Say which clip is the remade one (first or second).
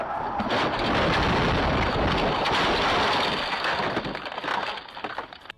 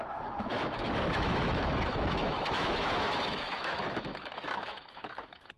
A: second